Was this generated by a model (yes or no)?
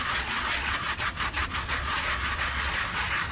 yes